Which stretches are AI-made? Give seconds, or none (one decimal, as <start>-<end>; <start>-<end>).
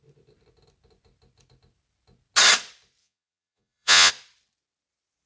3.0-4.1